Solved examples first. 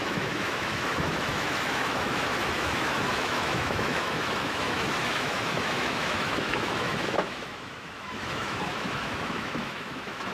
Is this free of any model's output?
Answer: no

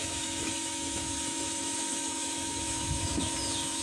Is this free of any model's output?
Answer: no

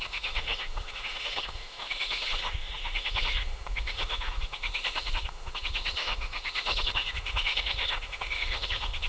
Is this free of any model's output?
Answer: no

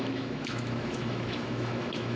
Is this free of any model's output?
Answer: no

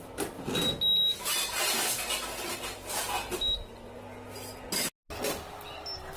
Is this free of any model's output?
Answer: yes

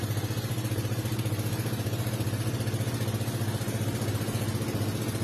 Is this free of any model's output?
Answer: yes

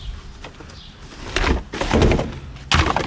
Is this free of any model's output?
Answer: yes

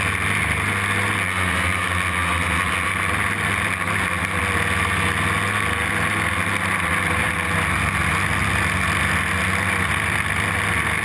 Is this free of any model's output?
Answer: yes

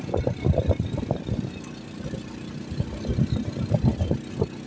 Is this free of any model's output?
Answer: yes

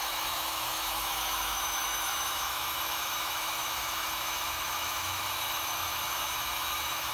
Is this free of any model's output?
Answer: no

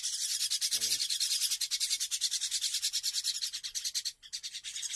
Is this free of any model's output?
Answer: yes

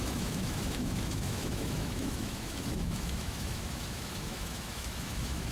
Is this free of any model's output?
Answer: no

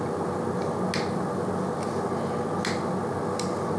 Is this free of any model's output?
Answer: yes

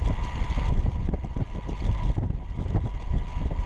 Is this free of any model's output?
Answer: yes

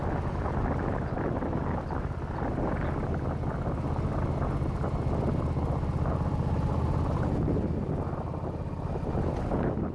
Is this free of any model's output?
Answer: yes